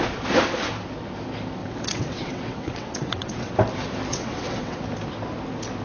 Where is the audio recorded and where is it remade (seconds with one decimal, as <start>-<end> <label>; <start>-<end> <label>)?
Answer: 0.0-1.6 recorded; 1.6-3.5 remade; 3.5-4.1 recorded; 4.1-4.8 remade; 4.8-5.8 recorded